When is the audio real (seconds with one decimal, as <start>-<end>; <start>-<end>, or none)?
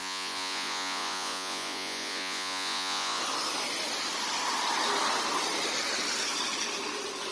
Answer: 3.2-7.3